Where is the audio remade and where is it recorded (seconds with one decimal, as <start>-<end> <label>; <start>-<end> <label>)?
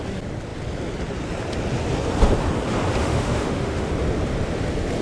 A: 0.0-3.0 recorded; 3.0-3.9 remade; 3.9-5.0 recorded